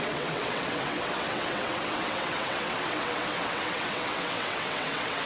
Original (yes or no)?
no